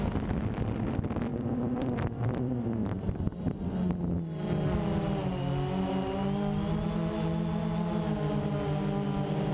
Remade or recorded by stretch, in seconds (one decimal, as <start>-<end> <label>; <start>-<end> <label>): 0.0-1.3 recorded; 1.3-3.7 remade; 3.7-9.5 recorded